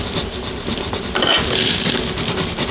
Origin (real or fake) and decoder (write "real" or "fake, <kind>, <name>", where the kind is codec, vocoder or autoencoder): real